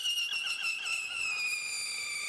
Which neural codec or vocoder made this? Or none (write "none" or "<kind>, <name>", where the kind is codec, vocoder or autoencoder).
none